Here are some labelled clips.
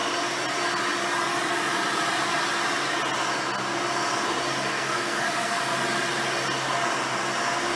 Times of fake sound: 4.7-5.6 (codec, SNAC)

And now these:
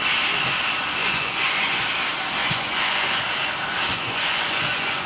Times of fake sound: 1.0-1.8 (vocoder, Vocos); 2.4-3.2; 3.9-5.1

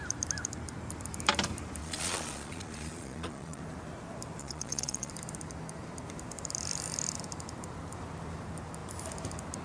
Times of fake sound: 1.8-3.6 (vocoder, Vocos); 4.4-5.1

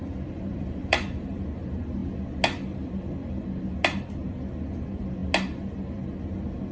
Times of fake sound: 0.0-1.3 (vocoder, BigVGAN v2)

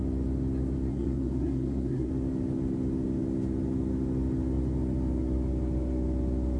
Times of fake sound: 0.9-2.1 (codec, SNAC)